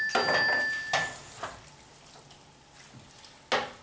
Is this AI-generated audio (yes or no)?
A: no